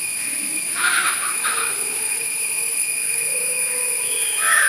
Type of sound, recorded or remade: remade